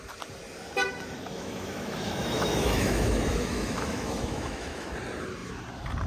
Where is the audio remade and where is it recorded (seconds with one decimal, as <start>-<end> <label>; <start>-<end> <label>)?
0.0-1.3 recorded; 1.3-4.9 remade; 4.9-6.1 recorded